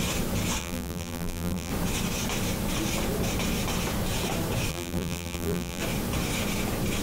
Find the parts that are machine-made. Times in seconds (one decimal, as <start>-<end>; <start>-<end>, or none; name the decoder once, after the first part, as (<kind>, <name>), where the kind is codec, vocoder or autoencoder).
0.6-1.7 (vocoder, BigVGAN v2); 4.7-5.8